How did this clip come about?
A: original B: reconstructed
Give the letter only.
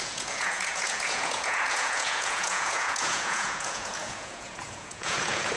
B